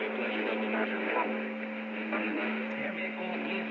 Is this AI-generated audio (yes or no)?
no